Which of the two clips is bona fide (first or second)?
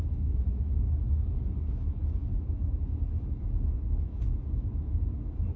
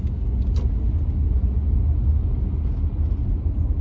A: second